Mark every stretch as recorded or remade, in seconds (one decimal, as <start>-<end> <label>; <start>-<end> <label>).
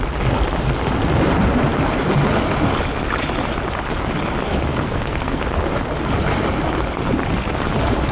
0.0-4.7 recorded; 4.7-5.4 remade; 5.4-8.1 recorded